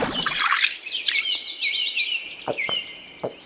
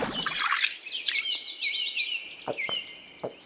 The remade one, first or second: first